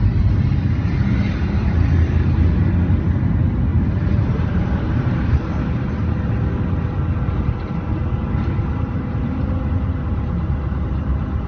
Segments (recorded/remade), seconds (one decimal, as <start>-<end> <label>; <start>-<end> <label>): 0.0-0.5 recorded; 0.5-1.4 remade; 1.4-3.7 recorded; 3.7-5.9 remade; 5.9-11.5 recorded

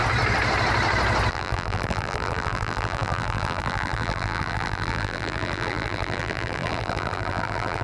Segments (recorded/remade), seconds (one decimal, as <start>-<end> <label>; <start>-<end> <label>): 0.0-1.3 recorded; 1.3-7.8 remade

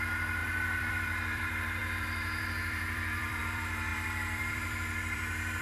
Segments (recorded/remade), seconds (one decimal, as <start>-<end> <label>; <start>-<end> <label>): 0.0-5.6 remade